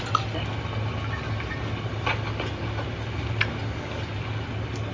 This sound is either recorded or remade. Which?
recorded